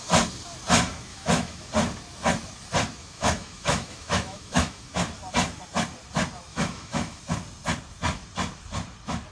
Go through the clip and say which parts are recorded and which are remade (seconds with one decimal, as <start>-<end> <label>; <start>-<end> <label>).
0.0-1.1 recorded; 1.1-1.7 remade; 1.7-3.0 recorded; 3.0-4.9 remade; 4.9-6.5 recorded; 6.5-7.2 remade; 7.2-9.3 recorded